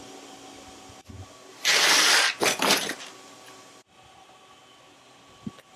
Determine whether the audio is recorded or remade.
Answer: recorded